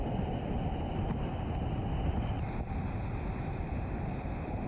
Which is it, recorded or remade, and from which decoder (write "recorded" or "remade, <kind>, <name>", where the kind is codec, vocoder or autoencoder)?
recorded